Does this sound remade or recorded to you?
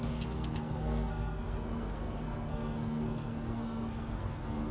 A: remade